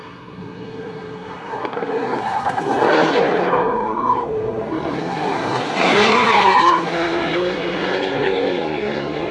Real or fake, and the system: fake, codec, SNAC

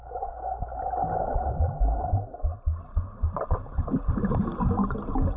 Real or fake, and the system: real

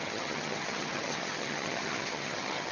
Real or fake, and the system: fake, vocoder, HiFi-GAN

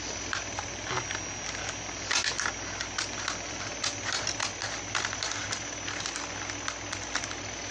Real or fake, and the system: real